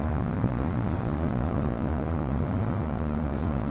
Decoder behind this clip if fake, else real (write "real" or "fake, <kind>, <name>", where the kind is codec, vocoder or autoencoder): fake, vocoder, Vocos